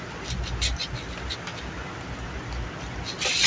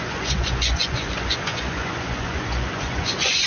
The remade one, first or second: second